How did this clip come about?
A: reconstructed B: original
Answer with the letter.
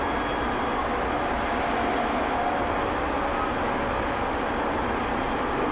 B